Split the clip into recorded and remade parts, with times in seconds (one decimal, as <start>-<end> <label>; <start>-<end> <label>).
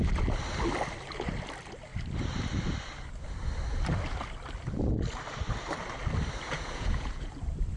0.0-6.4 recorded; 6.4-7.3 remade; 7.3-7.8 recorded